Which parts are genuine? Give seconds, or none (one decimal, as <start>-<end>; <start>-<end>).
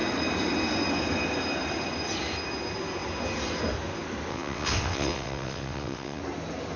0.0-4.3; 6.2-6.8